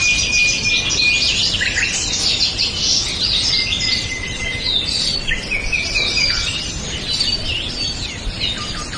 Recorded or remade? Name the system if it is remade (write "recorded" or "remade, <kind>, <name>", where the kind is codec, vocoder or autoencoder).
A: recorded